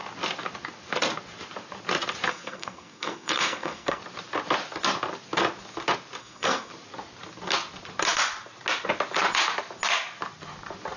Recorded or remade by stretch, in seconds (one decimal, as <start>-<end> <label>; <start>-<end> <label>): 0.0-2.3 recorded; 2.3-4.0 remade; 4.0-6.2 recorded; 6.2-6.7 remade; 6.7-11.0 recorded